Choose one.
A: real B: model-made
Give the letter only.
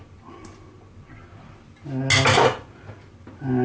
A